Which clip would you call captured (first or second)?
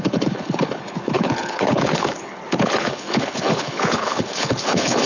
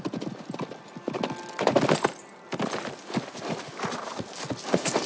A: second